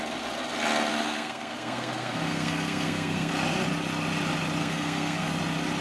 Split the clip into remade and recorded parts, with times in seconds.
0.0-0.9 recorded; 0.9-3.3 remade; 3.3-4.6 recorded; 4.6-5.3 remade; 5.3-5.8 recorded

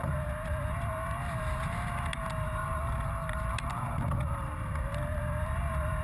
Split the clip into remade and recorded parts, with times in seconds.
0.0-6.0 recorded

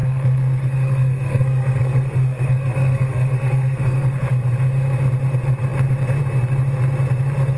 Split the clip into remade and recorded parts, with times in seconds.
0.0-4.3 remade; 4.3-7.6 recorded

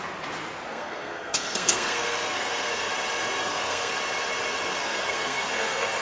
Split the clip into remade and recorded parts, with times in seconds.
0.0-0.7 recorded; 0.7-2.9 remade; 2.9-3.4 recorded; 3.4-3.9 remade; 3.9-4.8 recorded; 4.8-6.0 remade

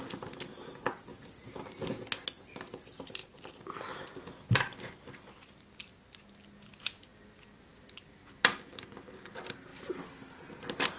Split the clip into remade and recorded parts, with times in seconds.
0.0-11.0 recorded

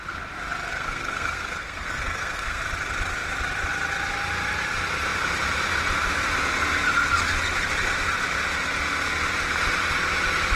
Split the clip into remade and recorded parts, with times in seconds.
0.0-0.7 recorded; 0.7-2.6 remade; 2.6-10.6 recorded

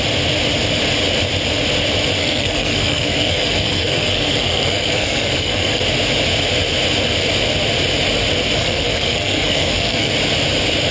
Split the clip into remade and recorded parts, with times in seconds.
0.0-2.2 recorded; 2.2-5.8 remade; 5.8-8.6 recorded; 8.6-10.1 remade; 10.1-10.9 recorded